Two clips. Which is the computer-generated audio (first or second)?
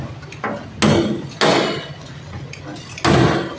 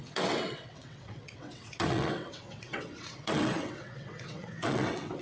second